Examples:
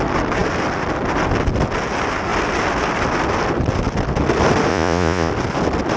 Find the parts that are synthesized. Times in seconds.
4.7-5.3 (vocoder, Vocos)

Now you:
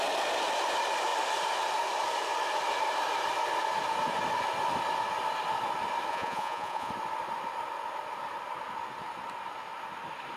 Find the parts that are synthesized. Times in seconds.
6.1-6.9 (vocoder, Vocos)

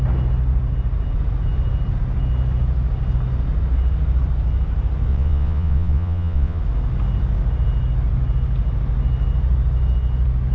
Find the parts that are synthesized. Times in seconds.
5.1-6.6 (vocoder, Vocos)

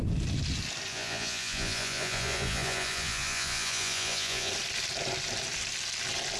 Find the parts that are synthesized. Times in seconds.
0.9-4.5 (vocoder, Vocos)

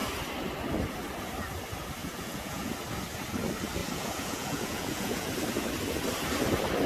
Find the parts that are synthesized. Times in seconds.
2.0-2.7 (vocoder, Vocos); 3.8-5.3

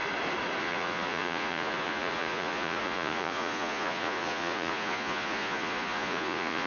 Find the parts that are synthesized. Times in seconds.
0.6-6.7 (vocoder, Vocos)

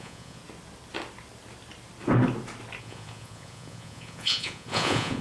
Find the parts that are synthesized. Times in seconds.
0.0-0.4 (vocoder, Vocos); 2.8-5.2